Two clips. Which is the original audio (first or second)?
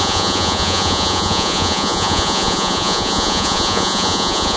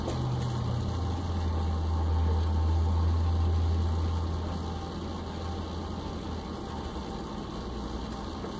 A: second